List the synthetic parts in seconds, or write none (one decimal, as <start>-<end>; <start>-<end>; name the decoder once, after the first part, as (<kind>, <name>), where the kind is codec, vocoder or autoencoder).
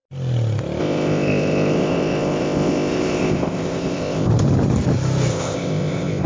0.8-4.3 (codec, ZipCodec); 5.3-6.3